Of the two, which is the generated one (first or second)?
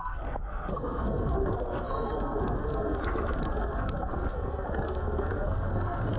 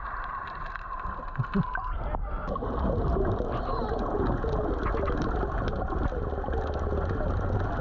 first